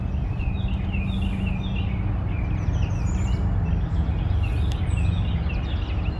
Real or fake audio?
real